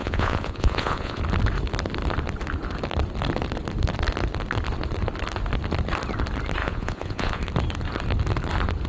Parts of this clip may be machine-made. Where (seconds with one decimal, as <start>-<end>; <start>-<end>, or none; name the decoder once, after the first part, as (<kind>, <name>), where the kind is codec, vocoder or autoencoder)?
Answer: 0.0-1.2 (vocoder, Vocos); 6.6-7.4